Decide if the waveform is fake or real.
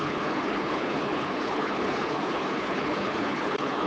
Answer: fake